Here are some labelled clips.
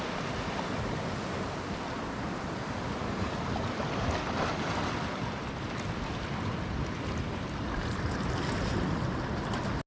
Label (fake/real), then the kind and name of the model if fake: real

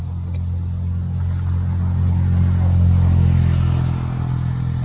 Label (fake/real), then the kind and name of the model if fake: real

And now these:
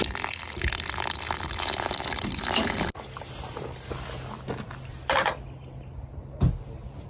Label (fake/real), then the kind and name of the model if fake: real